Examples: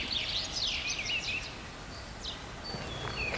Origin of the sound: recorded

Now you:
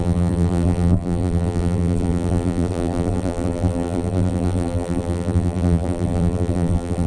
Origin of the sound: remade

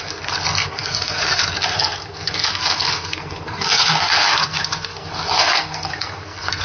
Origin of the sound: remade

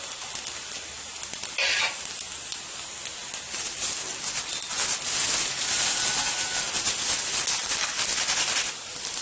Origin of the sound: recorded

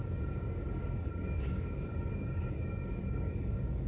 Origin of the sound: remade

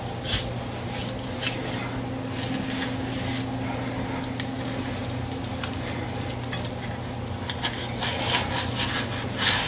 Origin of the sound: recorded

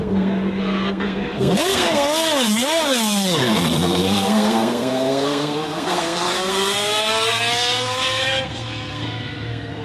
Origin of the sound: remade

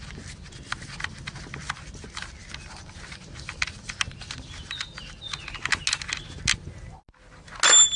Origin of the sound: recorded